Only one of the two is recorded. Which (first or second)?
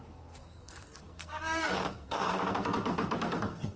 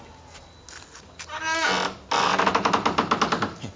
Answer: second